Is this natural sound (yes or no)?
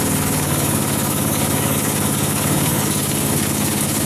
no